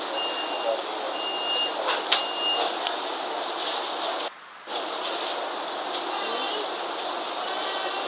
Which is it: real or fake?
real